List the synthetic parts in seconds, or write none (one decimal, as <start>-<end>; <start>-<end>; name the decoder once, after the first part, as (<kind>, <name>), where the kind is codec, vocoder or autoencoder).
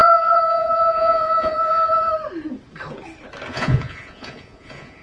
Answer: 0.0-2.1 (vocoder, Vocos); 3.5-5.0